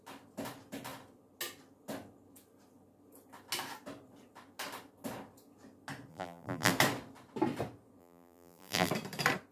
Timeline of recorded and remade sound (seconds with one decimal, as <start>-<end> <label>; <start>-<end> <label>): 0.0-6.1 recorded; 6.1-6.7 remade; 6.7-8.0 recorded; 8.0-8.9 remade; 8.9-9.5 recorded